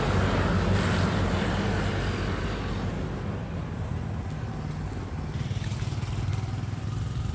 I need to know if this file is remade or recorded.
recorded